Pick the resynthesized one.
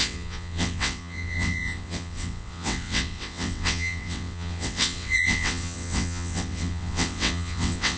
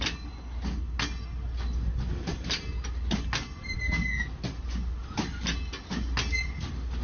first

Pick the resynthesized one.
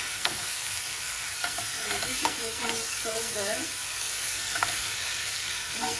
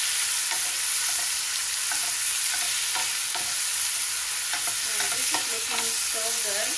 first